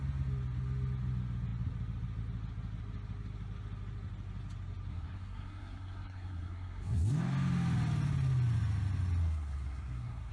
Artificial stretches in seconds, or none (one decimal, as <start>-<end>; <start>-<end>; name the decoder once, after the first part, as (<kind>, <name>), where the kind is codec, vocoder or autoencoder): 4.9-7.1 (codec, SNAC); 9.2-10.3